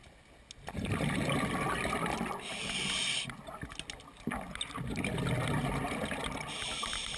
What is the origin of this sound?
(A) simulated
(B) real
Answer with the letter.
B